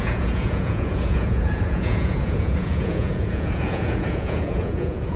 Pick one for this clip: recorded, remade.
remade